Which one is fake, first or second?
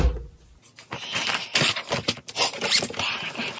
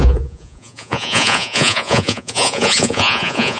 second